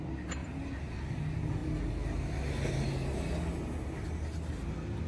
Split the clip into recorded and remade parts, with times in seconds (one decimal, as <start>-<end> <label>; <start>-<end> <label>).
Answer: 0.0-5.1 recorded